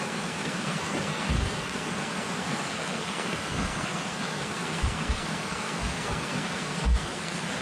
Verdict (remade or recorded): remade